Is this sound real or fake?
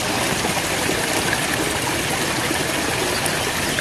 real